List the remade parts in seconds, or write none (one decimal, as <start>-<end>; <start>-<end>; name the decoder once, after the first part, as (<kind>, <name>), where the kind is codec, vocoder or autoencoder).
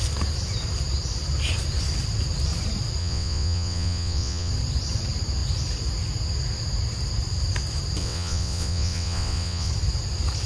3.0-4.5 (vocoder, WaveNeXt); 8.0-9.7